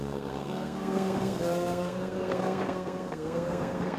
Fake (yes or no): yes